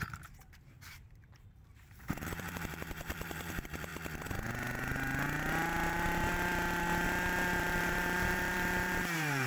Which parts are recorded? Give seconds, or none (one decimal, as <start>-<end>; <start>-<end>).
3.9-7.6